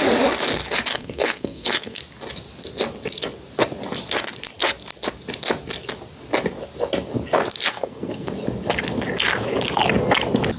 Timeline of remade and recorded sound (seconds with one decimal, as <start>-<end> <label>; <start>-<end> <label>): 0.0-0.9 recorded; 0.9-2.0 remade; 2.0-7.7 recorded; 7.7-8.3 remade; 8.3-10.6 recorded